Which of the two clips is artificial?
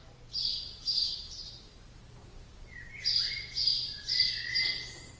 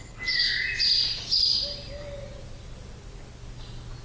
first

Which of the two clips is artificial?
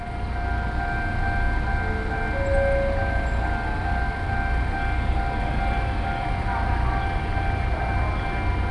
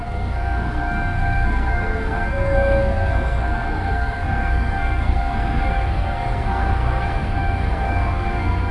second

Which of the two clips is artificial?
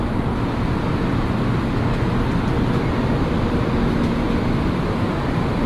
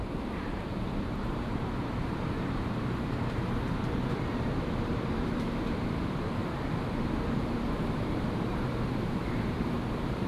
second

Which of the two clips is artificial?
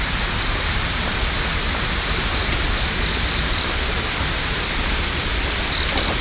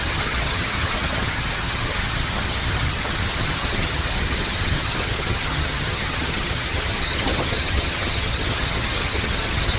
second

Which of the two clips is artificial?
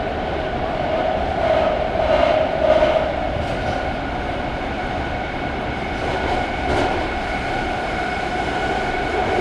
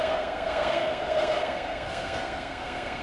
second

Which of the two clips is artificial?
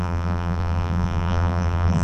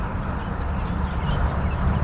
first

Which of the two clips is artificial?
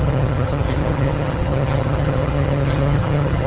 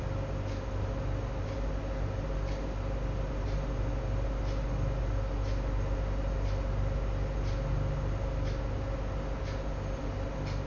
first